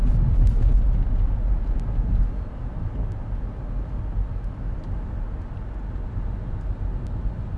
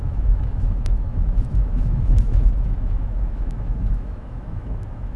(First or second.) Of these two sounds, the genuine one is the first